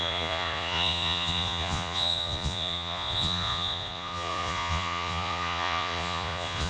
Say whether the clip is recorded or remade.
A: remade